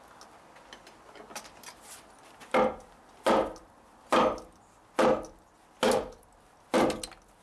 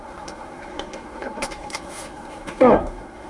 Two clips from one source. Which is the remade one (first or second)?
second